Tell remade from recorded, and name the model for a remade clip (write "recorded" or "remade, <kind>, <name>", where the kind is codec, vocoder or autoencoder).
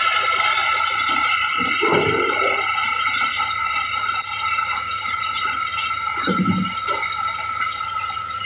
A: recorded